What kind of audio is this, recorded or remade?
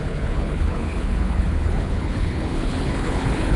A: remade